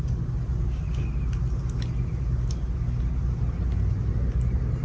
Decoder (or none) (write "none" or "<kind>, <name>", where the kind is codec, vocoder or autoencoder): none